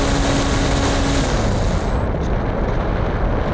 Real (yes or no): yes